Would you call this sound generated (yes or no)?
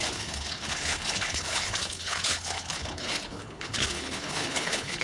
yes